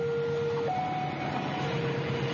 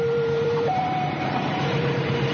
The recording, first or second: first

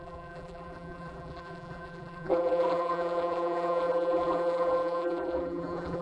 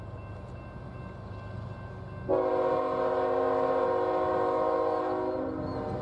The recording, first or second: second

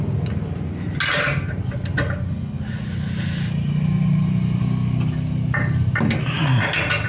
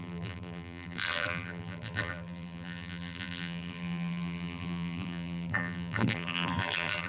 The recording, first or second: first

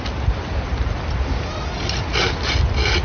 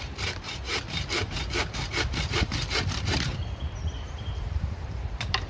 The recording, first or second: first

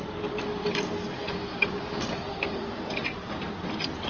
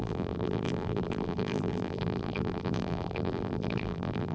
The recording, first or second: first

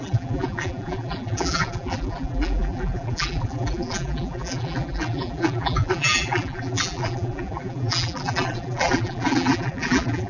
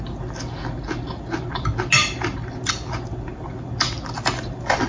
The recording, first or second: second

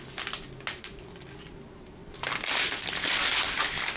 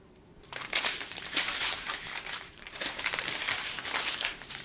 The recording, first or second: first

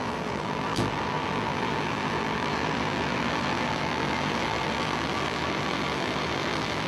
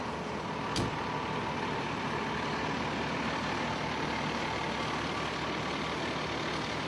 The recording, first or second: second